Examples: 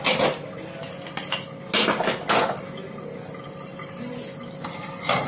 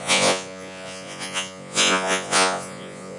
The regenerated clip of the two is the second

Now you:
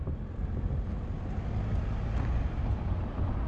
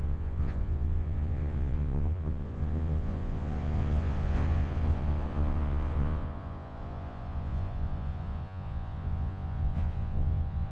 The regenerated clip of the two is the second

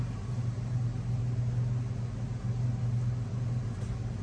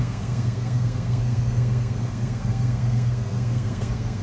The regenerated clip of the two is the second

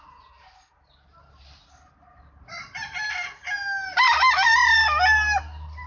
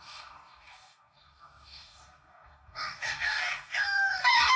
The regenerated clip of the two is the second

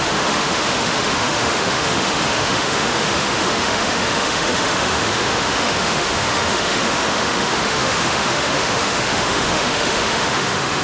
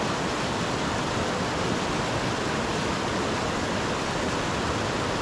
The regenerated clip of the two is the first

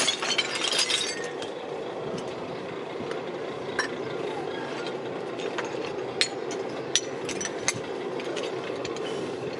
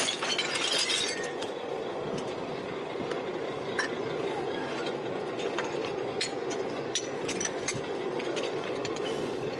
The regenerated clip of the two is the second